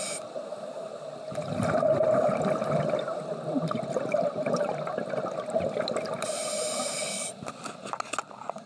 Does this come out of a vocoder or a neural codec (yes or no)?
no